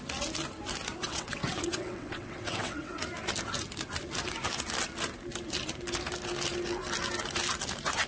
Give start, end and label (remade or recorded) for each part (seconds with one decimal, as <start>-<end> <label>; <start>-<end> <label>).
0.0-1.0 recorded; 1.0-3.0 remade; 3.0-8.1 recorded